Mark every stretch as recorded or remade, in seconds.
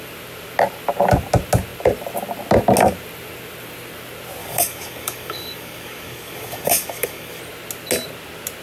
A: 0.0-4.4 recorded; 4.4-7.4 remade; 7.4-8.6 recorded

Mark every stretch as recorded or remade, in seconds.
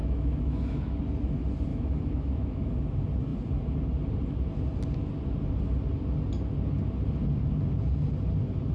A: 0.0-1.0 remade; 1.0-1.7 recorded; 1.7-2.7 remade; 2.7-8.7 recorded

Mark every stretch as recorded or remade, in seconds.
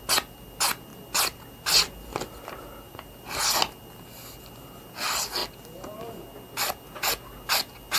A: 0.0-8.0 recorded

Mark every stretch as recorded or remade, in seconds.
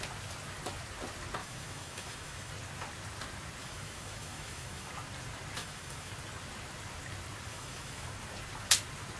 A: 0.0-1.4 recorded; 1.4-2.5 remade; 2.5-3.6 recorded; 3.6-4.9 remade; 4.9-5.6 recorded; 5.6-6.1 remade; 6.1-7.5 recorded; 7.5-8.1 remade; 8.1-9.2 recorded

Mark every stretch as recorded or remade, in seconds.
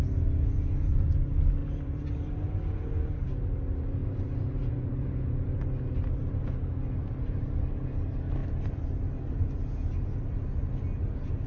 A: 0.0-1.6 recorded; 1.6-2.4 remade; 2.4-4.0 recorded; 4.0-6.4 remade; 6.4-11.5 recorded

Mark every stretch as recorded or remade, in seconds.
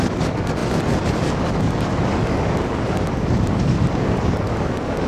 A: 0.0-5.1 remade